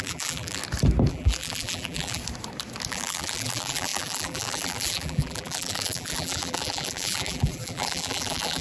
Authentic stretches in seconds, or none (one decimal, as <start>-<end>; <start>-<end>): 0.6-1.1; 2.2-2.9

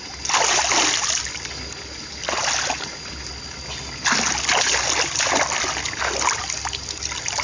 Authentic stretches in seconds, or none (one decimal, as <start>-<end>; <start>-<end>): 0.0-7.4